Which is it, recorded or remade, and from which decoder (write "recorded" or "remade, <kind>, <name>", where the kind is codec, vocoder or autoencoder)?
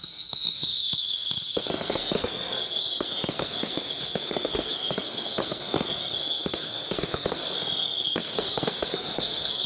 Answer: remade, codec, SNAC